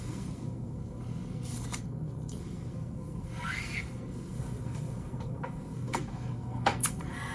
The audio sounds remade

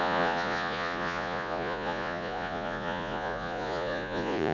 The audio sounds remade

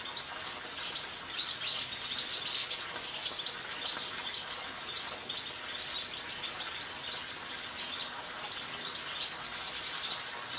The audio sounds recorded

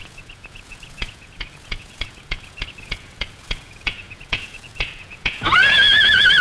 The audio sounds remade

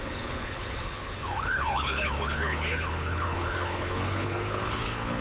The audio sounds remade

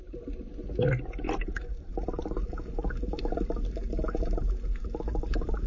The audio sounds recorded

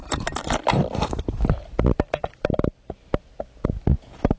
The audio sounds recorded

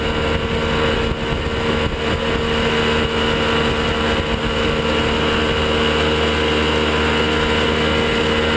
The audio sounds recorded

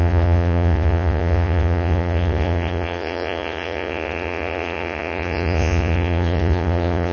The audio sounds remade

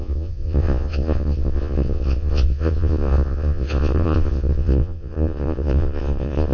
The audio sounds remade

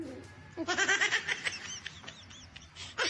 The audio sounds recorded